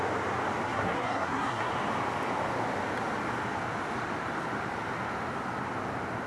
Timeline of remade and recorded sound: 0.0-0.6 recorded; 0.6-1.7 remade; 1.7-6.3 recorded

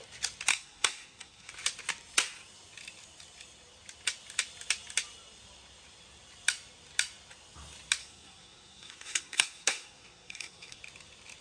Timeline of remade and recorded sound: 0.0-0.5 recorded; 0.5-1.5 remade; 1.5-8.0 recorded; 8.0-10.8 remade; 10.8-11.4 recorded

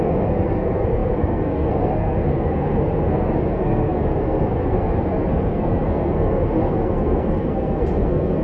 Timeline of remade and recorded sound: 0.0-8.4 remade

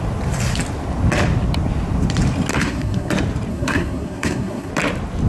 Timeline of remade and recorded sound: 0.0-2.5 recorded; 2.5-3.1 remade; 3.1-3.5 recorded; 3.5-4.7 remade; 4.7-5.3 recorded

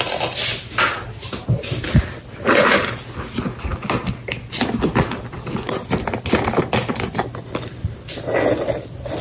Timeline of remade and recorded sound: 0.0-9.2 recorded

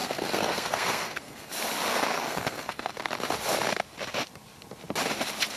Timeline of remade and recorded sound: 0.0-1.5 remade; 1.5-1.9 recorded; 1.9-3.1 remade; 3.1-5.6 recorded

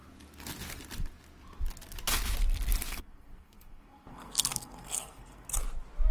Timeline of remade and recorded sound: 0.0-2.9 recorded; 2.9-5.5 remade; 5.5-6.1 recorded